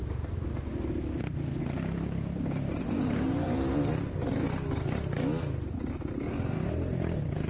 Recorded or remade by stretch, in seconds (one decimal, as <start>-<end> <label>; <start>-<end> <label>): 0.0-3.7 remade; 3.7-7.5 recorded